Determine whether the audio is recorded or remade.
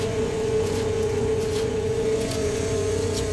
remade